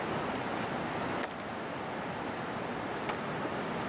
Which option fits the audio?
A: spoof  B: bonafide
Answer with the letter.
B